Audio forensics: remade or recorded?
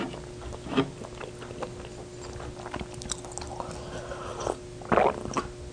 recorded